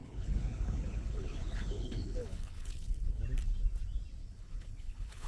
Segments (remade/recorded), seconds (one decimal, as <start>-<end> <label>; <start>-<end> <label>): 0.0-3.2 remade; 3.2-4.2 recorded; 4.2-5.3 remade